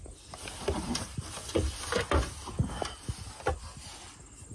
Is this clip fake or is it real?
real